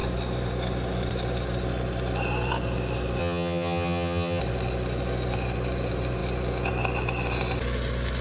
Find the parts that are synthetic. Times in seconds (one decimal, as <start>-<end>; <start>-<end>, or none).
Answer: 3.2-4.4